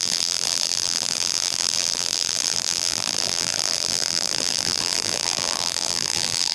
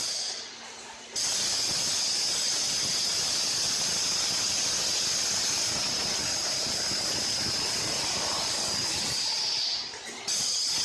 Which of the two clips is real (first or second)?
second